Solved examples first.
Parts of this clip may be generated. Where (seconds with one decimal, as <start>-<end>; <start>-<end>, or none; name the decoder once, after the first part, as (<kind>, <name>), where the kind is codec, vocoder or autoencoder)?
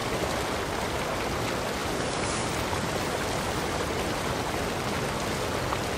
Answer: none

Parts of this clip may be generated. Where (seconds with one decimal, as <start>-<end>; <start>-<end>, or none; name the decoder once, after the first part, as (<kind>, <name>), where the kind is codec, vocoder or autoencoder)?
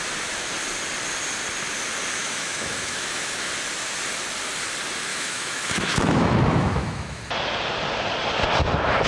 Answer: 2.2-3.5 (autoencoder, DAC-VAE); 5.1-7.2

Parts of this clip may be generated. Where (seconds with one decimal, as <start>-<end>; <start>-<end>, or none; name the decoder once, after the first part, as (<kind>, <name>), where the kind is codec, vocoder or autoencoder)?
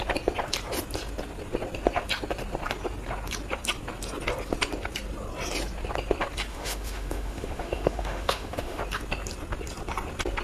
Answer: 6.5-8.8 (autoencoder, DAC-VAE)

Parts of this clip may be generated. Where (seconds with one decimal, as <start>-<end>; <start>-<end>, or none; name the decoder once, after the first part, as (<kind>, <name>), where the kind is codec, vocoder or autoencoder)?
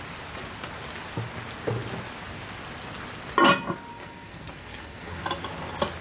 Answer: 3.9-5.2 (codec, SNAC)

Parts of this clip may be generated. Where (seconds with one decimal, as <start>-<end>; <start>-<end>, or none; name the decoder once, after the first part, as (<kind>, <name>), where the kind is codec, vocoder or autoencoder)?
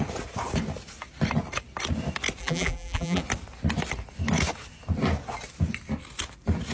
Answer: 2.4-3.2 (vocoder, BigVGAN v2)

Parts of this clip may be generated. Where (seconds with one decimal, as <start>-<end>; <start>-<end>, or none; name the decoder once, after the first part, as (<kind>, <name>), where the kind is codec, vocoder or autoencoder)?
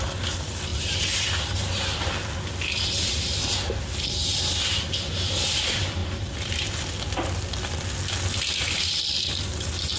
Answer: none